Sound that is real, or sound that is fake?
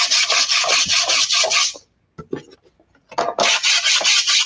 real